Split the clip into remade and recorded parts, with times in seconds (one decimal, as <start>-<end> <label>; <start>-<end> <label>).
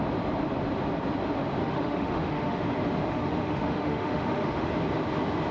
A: 0.0-1.6 recorded; 1.6-2.6 remade; 2.6-3.1 recorded; 3.1-4.7 remade; 4.7-5.5 recorded